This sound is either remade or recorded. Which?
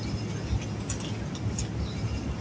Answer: recorded